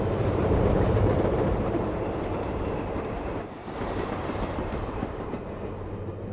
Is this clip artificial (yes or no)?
yes